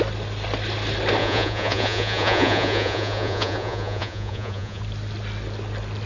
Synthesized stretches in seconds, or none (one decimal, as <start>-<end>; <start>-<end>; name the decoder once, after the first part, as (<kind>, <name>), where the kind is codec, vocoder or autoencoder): 1.2-4.8 (vocoder, Vocos)